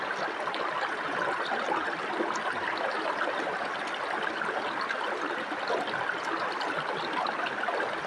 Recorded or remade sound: recorded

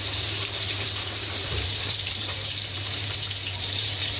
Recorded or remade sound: remade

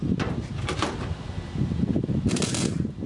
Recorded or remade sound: recorded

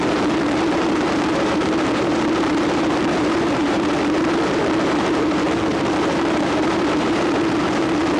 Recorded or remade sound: remade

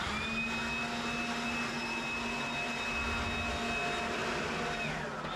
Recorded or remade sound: recorded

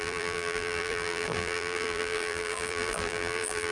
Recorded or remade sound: remade